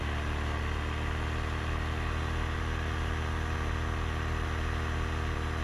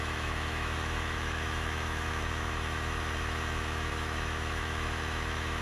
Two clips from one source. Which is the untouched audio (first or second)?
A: first